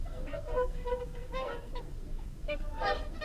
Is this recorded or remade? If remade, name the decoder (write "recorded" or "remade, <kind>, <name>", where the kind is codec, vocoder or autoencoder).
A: remade, codec, SNAC